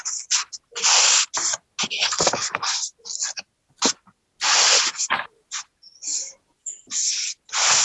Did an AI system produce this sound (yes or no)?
no